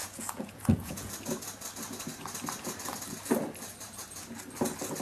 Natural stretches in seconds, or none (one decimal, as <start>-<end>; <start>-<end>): 1.1-5.0